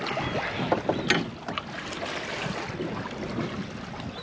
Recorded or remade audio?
recorded